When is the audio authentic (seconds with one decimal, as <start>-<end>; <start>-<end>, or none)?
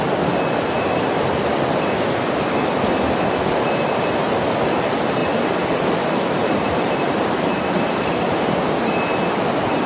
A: 0.0-5.2; 8.7-9.9